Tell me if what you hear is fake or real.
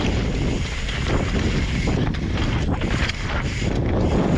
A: real